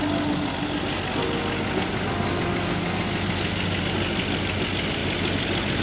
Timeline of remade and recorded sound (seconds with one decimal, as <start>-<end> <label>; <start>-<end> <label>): 0.0-5.8 recorded